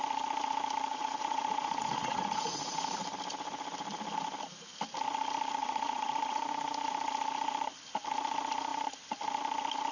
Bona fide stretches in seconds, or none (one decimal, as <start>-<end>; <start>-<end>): 0.0-0.9; 2.8-5.6; 6.5-9.9